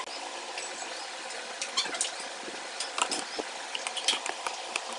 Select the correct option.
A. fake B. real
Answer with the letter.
B